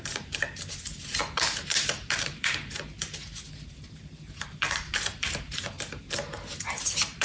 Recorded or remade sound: remade